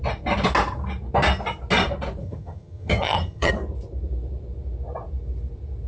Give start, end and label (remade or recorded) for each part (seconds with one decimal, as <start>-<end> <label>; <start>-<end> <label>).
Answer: 0.0-2.2 recorded; 2.2-3.5 remade; 3.5-5.9 recorded